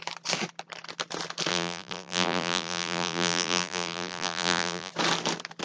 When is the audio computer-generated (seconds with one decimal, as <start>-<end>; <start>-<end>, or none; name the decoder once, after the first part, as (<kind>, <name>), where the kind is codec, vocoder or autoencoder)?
1.5-4.9 (vocoder, BigVGAN v2)